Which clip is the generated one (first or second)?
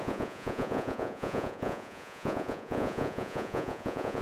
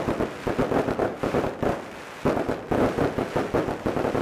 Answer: first